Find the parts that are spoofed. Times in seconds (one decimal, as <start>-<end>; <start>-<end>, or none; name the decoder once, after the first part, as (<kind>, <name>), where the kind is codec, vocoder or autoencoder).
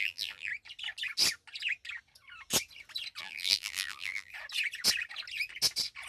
0.0-0.5 (vocoder, BigVGAN v2); 3.2-4.3